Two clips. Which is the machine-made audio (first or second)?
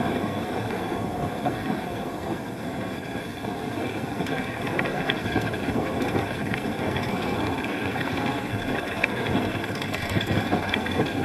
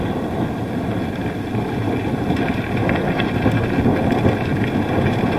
first